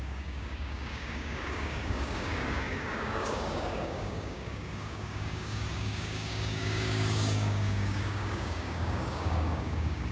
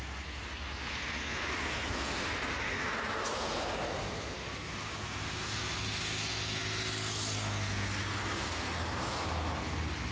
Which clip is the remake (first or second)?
first